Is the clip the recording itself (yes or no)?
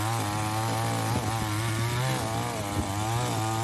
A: yes